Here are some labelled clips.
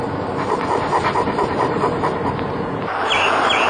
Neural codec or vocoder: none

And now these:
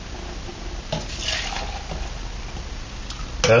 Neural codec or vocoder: none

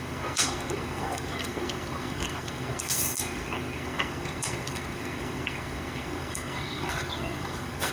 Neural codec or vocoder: codec, SNAC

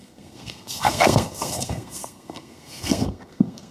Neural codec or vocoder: codec, SNAC